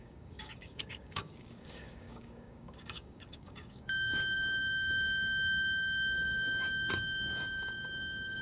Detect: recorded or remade remade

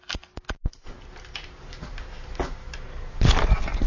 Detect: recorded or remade recorded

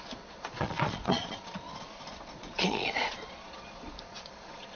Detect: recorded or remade remade